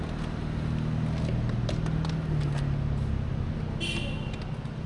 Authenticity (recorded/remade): recorded